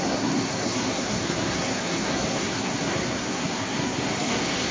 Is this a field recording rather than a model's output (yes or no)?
no